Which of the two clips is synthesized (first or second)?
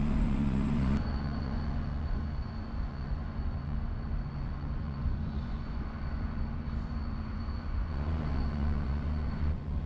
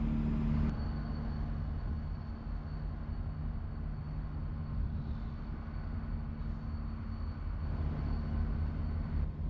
first